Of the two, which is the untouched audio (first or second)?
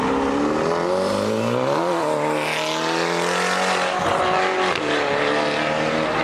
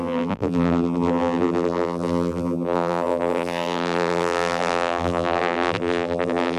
first